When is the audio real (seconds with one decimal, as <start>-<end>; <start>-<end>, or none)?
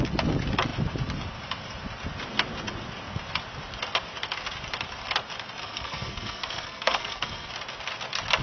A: 0.0-5.6; 7.5-8.4